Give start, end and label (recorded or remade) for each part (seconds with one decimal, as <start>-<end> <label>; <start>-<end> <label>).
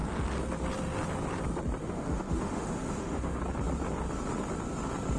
0.0-1.8 recorded; 1.8-3.4 remade; 3.4-5.2 recorded